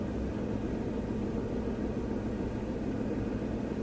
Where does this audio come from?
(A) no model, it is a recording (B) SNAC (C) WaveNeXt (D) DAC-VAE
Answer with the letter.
A